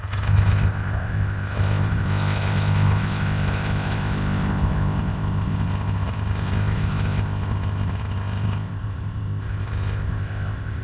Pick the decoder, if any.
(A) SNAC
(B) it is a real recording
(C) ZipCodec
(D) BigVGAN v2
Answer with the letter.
C